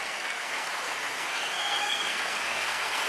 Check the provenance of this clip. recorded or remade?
remade